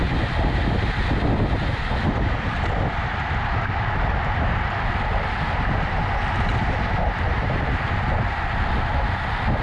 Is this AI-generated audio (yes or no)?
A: no